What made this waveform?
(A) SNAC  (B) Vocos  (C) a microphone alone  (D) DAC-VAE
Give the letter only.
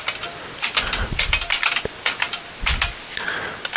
C